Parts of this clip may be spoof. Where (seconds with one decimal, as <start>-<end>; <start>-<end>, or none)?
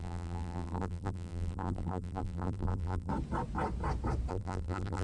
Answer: 0.0-3.1; 4.3-5.0